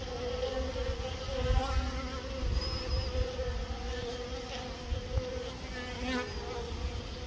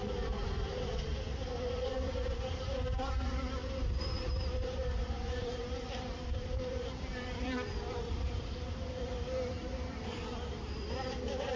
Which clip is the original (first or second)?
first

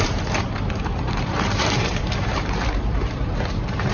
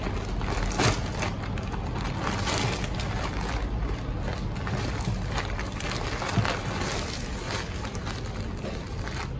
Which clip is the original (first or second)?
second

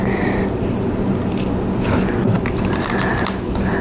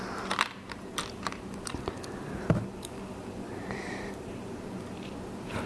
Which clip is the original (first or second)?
first